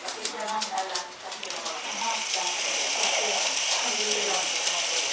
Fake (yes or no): yes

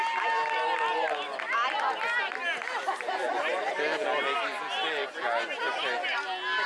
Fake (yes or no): no